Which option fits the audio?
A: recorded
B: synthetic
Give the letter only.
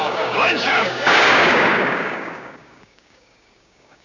B